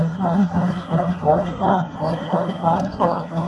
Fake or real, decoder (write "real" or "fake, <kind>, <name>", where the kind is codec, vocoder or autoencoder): fake, codec, SNAC